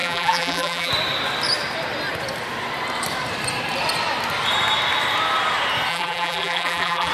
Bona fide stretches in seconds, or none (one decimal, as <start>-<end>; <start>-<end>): 0.9-5.9